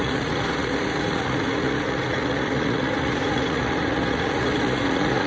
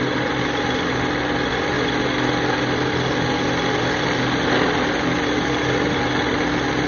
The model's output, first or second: first